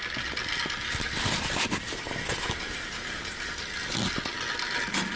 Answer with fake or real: real